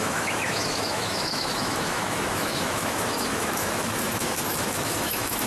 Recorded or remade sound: remade